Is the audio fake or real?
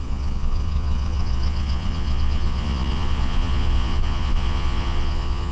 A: fake